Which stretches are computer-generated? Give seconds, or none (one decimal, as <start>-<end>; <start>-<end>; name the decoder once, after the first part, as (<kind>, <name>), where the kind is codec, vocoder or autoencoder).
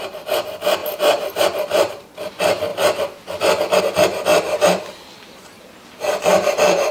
0.8-2.3 (vocoder, BigVGAN v2); 4.3-6.9